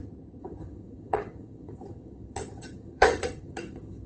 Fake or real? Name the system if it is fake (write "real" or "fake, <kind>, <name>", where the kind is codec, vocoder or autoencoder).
fake, vocoder, HiFi-GAN